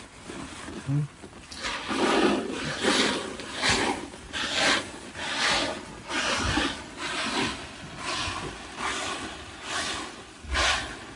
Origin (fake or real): real